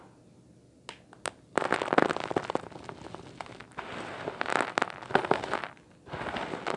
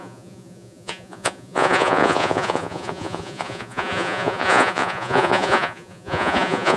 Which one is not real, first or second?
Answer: second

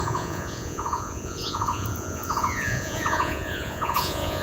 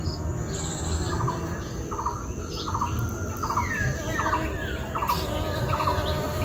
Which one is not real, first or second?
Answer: first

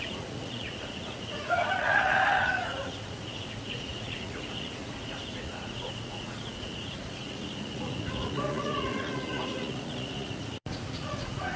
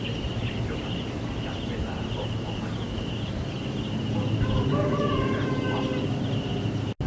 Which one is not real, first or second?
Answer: first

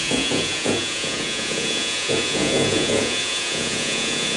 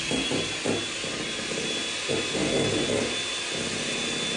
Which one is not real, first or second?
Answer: first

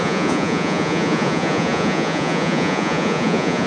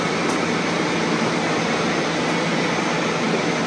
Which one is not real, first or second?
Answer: first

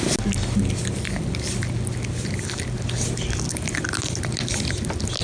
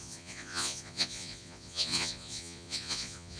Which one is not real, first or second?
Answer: second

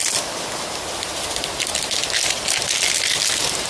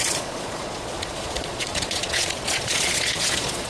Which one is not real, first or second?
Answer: second